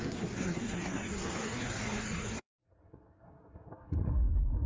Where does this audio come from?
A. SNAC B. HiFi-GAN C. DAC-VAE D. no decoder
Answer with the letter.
A